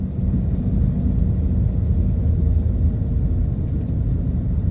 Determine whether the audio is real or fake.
real